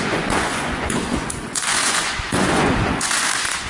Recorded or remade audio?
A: remade